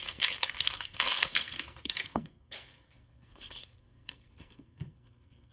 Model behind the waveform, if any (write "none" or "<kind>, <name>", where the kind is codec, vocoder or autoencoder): codec, SNAC